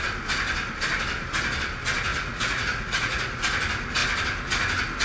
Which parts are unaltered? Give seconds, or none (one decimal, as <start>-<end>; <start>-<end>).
0.0-2.1; 3.4-5.0